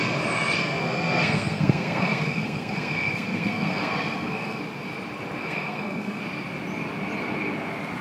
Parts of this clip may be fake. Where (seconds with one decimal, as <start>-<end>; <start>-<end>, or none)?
0.6-4.6; 5.4-6.2

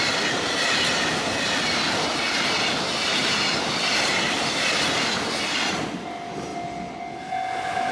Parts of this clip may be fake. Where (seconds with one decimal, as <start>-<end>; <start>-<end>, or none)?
none